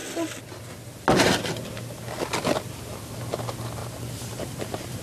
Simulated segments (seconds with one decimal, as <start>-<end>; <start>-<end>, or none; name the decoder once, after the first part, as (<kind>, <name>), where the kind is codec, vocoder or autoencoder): 3.8-5.0 (vocoder, BigVGAN v2)